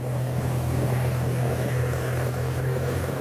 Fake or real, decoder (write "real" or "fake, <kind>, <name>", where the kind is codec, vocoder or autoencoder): fake, codec, DAC